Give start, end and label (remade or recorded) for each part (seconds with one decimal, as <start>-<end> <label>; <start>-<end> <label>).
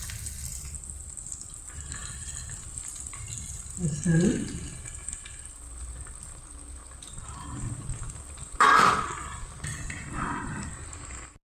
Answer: 0.0-6.8 recorded; 6.8-10.7 remade; 10.7-11.5 recorded